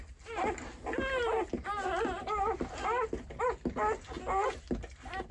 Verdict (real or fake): real